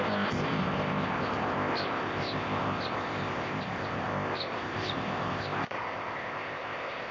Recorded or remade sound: remade